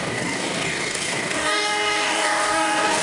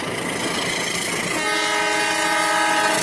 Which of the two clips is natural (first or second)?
second